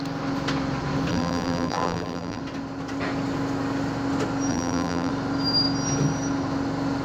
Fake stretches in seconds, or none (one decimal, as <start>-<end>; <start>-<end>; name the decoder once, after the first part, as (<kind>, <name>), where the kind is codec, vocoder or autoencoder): 1.1-2.4 (vocoder, BigVGAN v2); 4.5-5.1

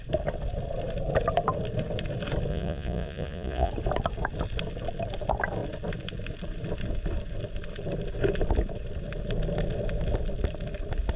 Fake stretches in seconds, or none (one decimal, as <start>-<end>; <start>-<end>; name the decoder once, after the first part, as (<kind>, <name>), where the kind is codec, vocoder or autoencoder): 2.5-3.7 (vocoder, Vocos)

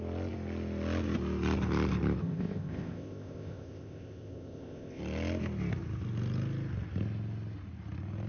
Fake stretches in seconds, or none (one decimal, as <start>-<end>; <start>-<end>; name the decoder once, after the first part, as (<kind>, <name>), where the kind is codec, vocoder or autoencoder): 2.2-5.0 (codec, ZipCodec)